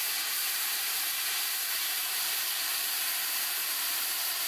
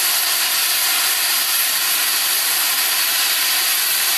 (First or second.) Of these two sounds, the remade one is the first